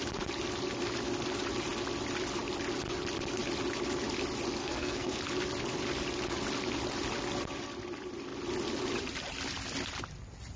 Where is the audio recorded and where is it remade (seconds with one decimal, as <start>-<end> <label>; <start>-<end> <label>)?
0.0-4.6 recorded; 4.6-5.2 remade; 5.2-10.6 recorded